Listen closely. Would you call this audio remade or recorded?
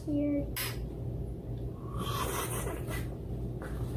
recorded